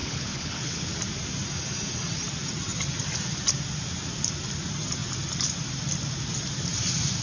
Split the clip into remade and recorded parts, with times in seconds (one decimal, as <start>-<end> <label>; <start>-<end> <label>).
0.0-0.9 remade; 0.9-7.2 recorded